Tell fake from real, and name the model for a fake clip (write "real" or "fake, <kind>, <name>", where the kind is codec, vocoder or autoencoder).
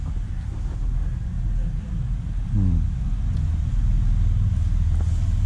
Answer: real